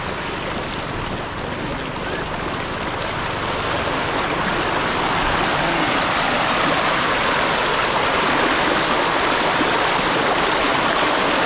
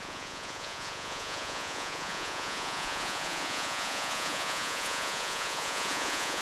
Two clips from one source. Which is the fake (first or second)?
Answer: second